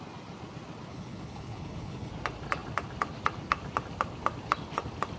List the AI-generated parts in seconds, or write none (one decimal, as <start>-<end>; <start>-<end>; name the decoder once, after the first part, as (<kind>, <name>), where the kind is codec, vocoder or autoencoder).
0.9-2.1 (codec, HILCodec)